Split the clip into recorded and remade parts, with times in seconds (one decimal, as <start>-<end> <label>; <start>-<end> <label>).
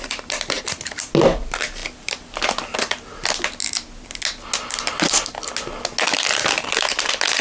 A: 0.0-7.4 recorded